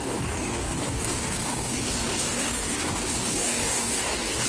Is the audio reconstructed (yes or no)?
yes